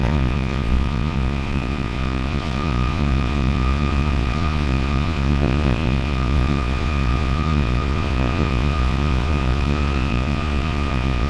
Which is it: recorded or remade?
remade